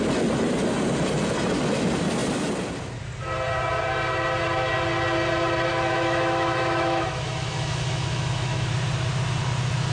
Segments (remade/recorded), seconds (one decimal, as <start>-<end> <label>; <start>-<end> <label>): 0.0-5.7 recorded; 5.7-8.7 remade; 8.7-9.9 recorded